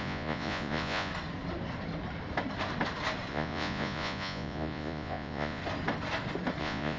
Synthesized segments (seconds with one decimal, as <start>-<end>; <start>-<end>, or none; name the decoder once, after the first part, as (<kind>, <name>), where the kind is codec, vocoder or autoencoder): 0.0-1.1 (vocoder, Vocos); 3.3-5.6; 6.6-7.0